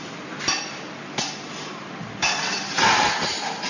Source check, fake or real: real